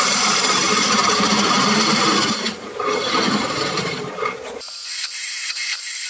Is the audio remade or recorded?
remade